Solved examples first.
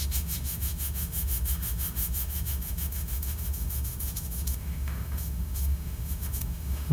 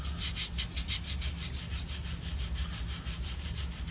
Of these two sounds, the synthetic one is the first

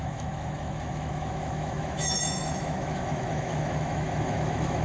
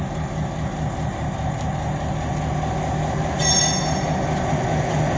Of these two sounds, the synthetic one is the first